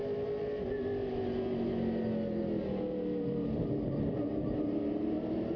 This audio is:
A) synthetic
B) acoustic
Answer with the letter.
B